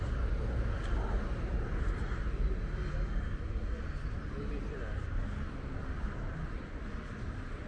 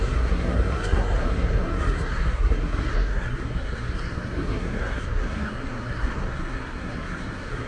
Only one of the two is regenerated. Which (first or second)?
second